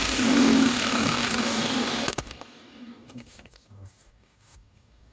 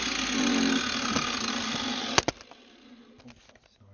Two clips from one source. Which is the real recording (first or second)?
second